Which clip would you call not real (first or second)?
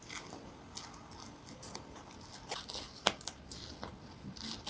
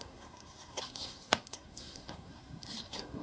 second